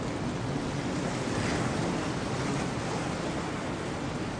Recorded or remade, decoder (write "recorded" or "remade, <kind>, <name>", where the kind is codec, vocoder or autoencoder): recorded